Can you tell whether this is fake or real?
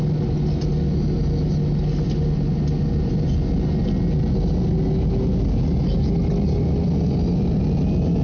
real